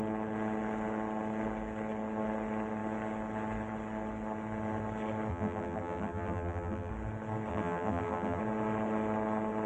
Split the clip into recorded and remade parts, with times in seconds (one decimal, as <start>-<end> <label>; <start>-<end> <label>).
0.0-5.3 recorded; 5.3-6.9 remade; 6.9-7.5 recorded; 7.5-8.4 remade; 8.4-9.7 recorded